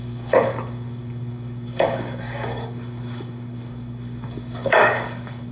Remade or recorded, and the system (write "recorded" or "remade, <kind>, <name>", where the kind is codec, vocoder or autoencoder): remade, codec, DAC